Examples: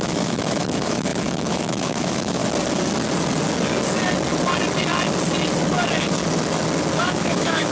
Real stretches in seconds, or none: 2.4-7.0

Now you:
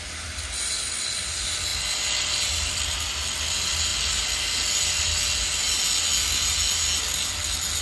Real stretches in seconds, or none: 0.0-7.8

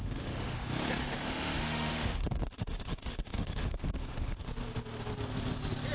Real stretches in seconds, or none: 0.6-1.0; 4.5-5.9

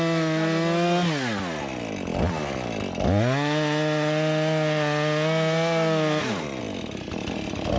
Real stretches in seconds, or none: 0.0-7.8

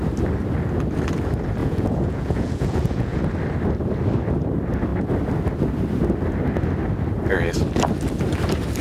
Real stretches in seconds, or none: 0.0-1.6; 3.2-8.8

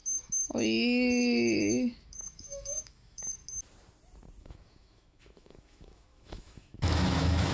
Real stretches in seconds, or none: 3.4-4.4

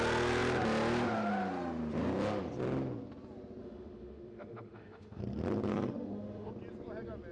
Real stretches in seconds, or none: 0.0-3.6; 5.2-5.7; 6.5-7.3

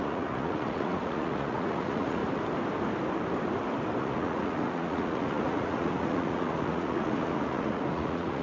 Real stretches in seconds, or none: 2.2-4.0